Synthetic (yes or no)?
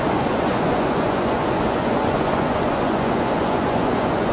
yes